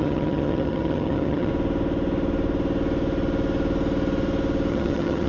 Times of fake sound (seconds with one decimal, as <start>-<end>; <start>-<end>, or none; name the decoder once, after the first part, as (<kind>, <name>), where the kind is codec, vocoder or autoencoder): 0.0-1.5 (vocoder, HiFi-GAN); 4.7-5.3